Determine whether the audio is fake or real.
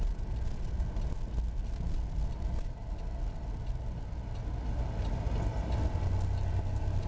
real